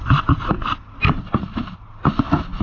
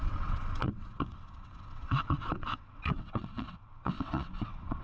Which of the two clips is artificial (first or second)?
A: second